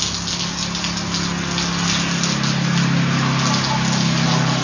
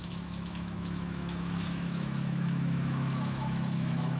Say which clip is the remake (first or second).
second